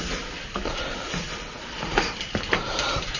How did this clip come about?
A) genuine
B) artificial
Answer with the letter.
A